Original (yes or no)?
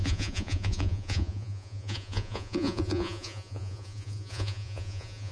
no